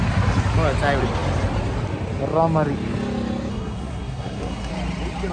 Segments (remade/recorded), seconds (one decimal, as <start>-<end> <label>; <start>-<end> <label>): 0.0-3.5 recorded; 3.5-4.7 remade; 4.7-5.3 recorded

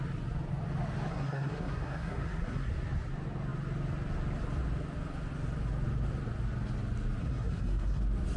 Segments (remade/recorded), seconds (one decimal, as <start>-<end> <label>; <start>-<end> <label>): 0.0-1.1 recorded; 1.1-2.7 remade; 2.7-7.2 recorded; 7.2-8.0 remade; 8.0-8.4 recorded

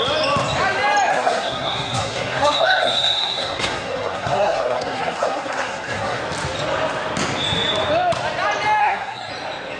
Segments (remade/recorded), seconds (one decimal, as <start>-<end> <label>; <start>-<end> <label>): 0.0-1.1 recorded; 1.1-6.2 remade; 6.2-8.8 recorded; 8.8-9.3 remade; 9.3-9.8 recorded

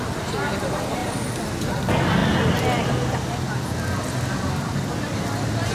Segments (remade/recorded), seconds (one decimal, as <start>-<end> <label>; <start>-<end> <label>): 0.0-5.7 recorded

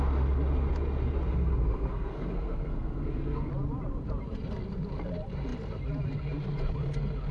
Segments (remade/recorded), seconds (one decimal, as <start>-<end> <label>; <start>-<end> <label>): 0.0-1.3 recorded; 1.3-3.5 remade; 3.5-7.3 recorded